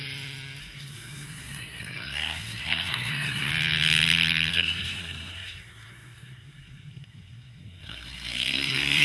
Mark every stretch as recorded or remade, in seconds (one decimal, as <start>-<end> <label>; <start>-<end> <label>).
0.0-0.6 recorded; 0.6-3.5 remade; 3.5-4.5 recorded; 4.5-9.0 remade